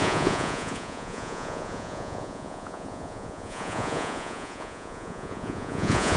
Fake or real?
fake